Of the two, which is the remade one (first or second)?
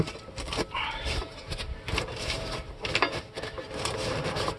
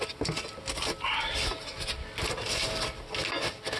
first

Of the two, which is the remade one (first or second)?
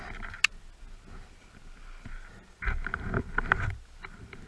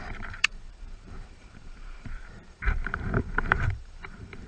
second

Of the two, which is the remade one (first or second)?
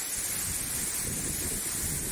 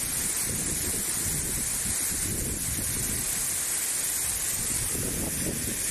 second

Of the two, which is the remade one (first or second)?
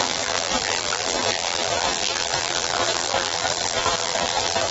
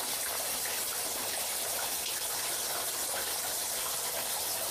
first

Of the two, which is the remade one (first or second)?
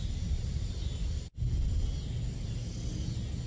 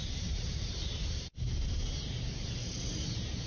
second